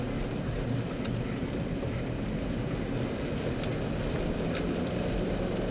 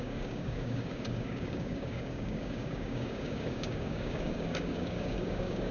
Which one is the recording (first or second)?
first